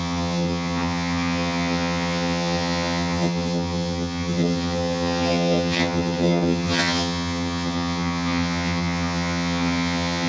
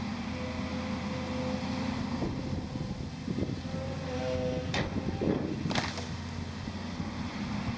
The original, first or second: second